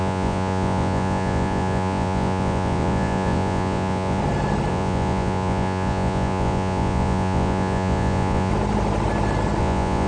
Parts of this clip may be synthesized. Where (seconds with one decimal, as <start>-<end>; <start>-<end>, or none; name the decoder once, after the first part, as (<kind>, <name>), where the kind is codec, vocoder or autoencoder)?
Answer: 0.0-4.2 (vocoder, Vocos); 4.7-8.5; 9.6-10.1